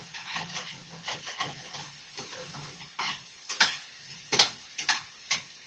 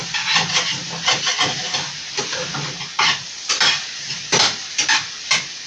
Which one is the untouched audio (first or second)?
second